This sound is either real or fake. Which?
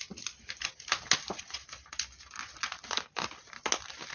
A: real